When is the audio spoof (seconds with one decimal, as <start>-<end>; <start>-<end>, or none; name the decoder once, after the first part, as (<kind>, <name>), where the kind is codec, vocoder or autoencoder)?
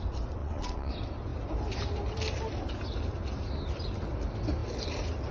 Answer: 0.4-0.9 (vocoder, WaveNeXt)